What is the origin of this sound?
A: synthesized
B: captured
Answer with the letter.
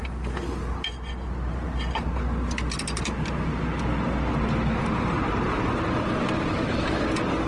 B